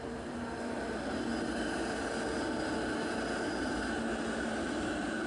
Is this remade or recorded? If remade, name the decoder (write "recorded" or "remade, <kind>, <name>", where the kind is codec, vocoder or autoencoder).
recorded